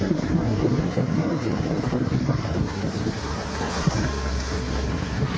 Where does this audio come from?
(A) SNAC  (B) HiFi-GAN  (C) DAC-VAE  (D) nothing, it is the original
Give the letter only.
A